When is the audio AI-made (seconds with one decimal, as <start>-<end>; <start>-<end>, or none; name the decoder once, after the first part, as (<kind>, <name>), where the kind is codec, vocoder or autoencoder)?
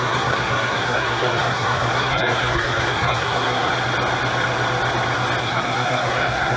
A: 0.0-3.7 (codec, SNAC); 5.4-6.6